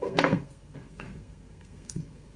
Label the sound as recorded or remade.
remade